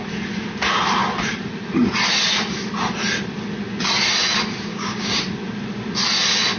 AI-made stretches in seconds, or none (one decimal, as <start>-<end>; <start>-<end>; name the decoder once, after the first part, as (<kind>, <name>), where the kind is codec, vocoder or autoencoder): 4.7-5.2 (codec, DAC)